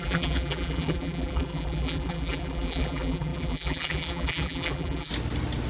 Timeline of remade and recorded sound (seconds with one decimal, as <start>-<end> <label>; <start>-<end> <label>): 0.0-5.1 remade; 5.1-5.7 recorded